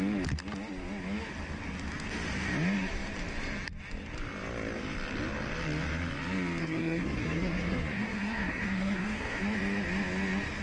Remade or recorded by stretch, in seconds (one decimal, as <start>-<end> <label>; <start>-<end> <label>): 0.0-6.6 recorded; 6.6-9.4 remade; 9.4-10.6 recorded